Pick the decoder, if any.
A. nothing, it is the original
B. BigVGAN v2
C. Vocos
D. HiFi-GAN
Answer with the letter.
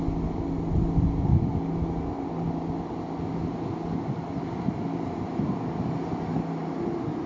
A